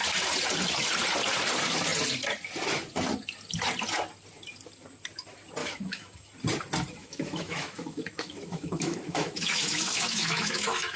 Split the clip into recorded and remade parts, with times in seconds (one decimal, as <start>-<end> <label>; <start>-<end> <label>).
0.0-5.6 recorded; 5.6-6.3 remade; 6.3-7.0 recorded; 7.0-11.0 remade